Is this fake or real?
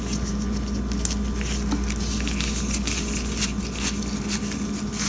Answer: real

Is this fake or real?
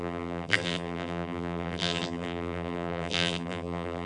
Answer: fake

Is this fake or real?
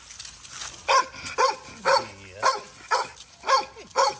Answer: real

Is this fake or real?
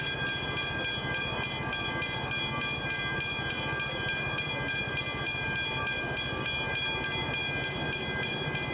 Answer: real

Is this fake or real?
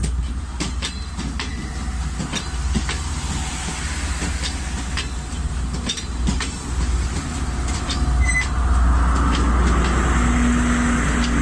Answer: real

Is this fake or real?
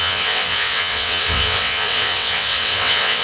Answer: fake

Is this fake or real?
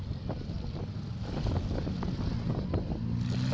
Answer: real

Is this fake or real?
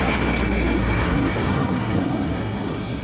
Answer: fake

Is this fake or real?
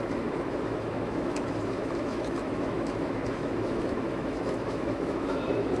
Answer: fake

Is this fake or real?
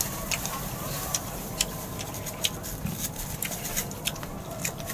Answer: fake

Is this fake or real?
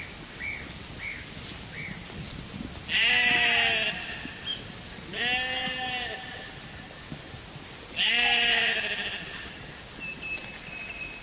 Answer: real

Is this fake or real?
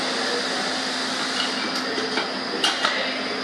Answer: real